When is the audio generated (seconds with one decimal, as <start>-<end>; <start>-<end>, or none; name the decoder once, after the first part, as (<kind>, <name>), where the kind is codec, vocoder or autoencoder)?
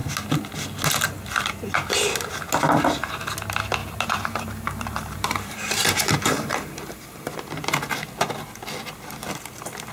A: 3.8-7.5 (vocoder, BigVGAN v2)